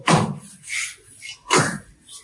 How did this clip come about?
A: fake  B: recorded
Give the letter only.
B